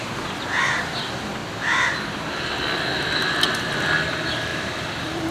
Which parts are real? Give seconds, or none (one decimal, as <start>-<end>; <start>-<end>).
0.0-4.5